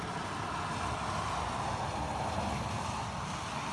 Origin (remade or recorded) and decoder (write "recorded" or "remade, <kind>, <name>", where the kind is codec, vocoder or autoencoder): recorded